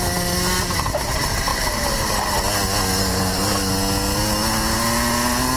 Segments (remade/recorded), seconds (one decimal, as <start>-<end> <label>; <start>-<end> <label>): 0.0-3.0 recorded; 3.0-3.7 remade; 3.7-5.6 recorded